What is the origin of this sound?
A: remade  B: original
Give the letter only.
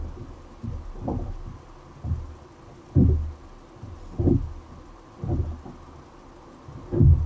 B